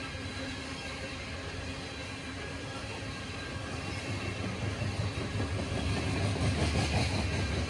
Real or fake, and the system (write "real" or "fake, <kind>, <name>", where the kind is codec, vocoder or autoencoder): real